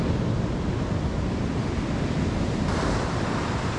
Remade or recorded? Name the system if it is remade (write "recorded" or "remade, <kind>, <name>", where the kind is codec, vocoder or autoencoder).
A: recorded